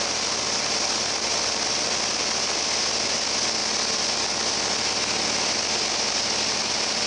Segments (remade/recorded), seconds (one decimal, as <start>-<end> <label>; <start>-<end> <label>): 0.0-7.1 recorded